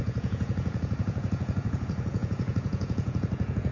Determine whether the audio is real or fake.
fake